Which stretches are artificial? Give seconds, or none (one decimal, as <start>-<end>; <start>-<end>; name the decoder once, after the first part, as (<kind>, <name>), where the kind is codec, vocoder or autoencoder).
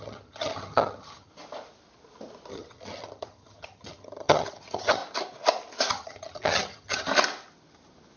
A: 0.0-1.3 (vocoder, HiFi-GAN); 2.5-5.0; 5.9-7.1